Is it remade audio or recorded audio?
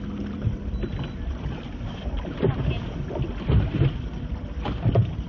recorded